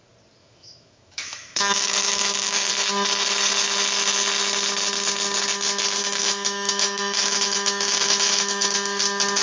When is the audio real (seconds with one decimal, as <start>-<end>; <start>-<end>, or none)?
0.0-0.4; 2.7-6.0; 9.0-9.4